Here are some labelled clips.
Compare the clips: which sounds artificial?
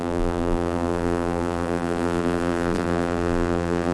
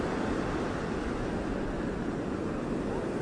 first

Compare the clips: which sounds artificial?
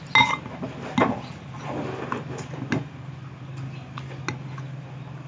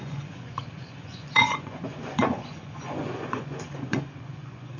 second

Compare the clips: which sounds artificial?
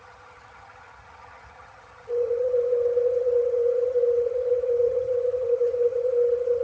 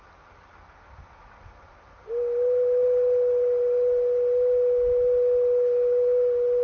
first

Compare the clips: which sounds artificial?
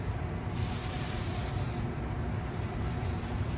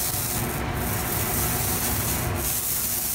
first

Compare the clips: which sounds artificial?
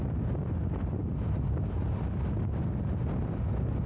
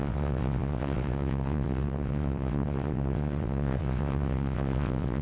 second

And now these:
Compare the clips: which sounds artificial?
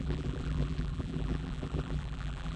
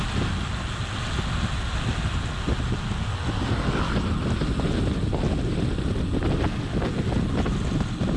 first